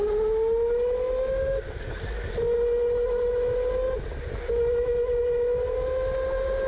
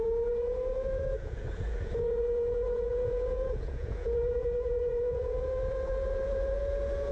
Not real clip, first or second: second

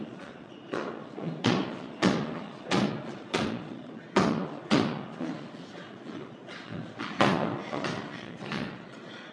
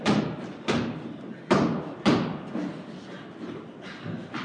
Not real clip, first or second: first